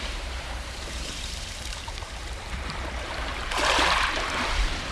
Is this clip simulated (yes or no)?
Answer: yes